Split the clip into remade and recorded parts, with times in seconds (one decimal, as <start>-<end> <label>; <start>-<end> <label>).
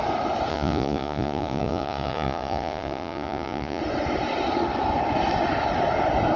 0.0-0.5 recorded; 0.5-3.8 remade; 3.8-6.4 recorded